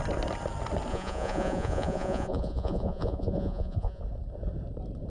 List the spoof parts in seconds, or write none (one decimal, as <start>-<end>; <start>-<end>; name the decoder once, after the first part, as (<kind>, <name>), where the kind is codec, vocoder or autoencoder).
0.9-4.0 (vocoder, Vocos)